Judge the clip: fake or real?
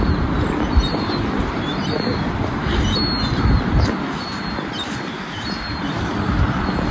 real